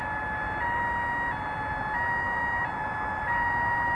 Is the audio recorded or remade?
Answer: recorded